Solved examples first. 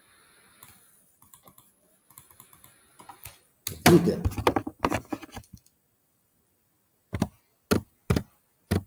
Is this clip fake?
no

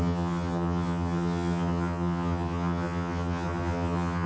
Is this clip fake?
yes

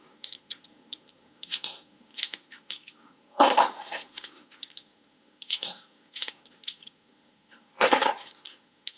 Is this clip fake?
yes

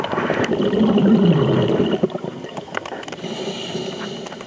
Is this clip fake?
yes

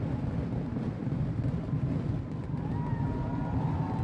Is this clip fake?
no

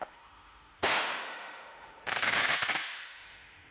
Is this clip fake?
yes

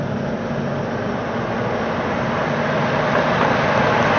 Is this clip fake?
no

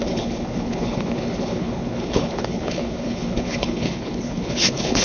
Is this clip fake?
yes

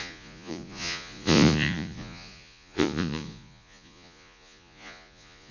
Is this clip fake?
yes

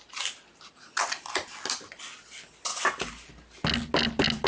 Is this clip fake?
no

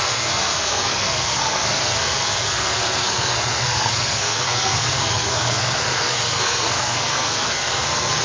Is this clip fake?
yes